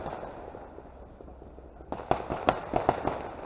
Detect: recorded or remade recorded